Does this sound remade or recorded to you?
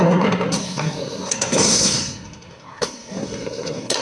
remade